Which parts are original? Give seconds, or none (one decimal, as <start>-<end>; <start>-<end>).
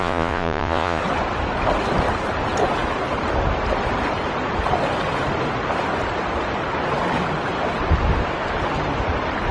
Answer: 1.0-9.5